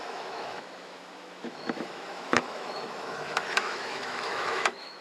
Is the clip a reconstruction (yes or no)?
yes